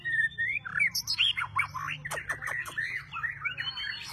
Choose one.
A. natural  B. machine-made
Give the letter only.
B